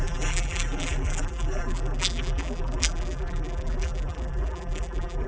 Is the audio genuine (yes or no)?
no